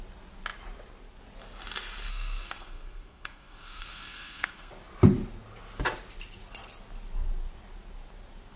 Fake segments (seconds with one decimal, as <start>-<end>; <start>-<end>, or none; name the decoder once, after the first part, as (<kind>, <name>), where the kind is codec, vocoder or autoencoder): 2.1-4.7 (codec, SNAC)